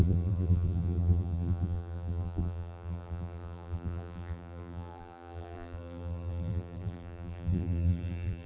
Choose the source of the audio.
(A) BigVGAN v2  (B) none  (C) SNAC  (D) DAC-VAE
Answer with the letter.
A